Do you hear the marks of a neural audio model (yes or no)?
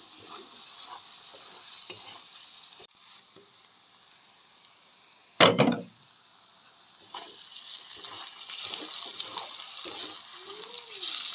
no